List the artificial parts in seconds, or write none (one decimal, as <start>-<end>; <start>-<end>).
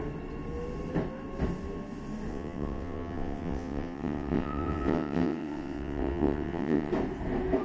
2.3-6.9